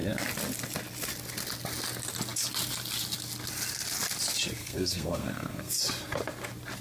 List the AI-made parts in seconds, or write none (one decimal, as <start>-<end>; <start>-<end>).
4.6-5.8